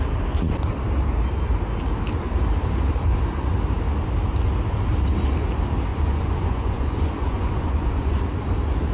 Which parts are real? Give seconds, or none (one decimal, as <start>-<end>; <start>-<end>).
0.0-5.9; 8.2-8.9